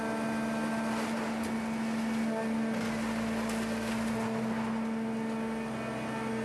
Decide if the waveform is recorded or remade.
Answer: recorded